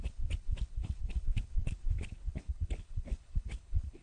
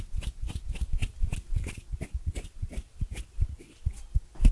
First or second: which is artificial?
first